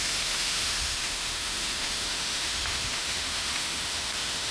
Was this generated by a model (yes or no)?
yes